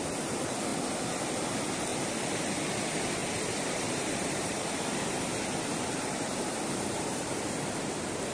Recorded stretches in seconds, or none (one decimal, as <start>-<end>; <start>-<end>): 0.0-1.9; 2.5-3.2; 7.4-8.3